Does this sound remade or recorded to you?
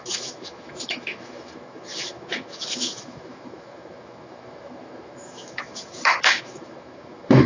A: remade